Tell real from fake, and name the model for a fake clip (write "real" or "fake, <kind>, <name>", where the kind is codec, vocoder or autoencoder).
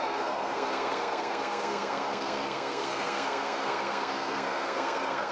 fake, codec, SNAC